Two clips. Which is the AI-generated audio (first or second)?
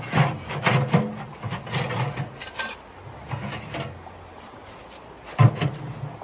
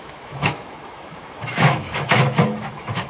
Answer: second